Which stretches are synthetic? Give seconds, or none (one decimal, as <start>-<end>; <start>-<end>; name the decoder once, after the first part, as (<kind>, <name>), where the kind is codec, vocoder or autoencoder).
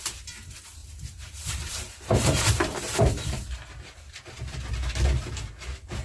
0.8-4.4 (vocoder, BigVGAN v2)